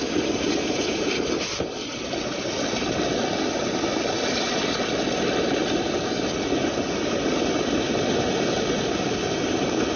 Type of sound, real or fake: real